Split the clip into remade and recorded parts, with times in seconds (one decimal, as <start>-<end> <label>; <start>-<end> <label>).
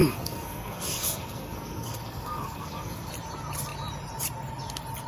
0.0-3.1 remade; 3.1-5.1 recorded